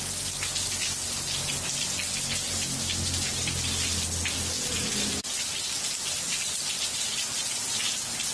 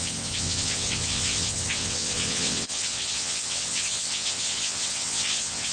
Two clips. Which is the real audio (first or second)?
first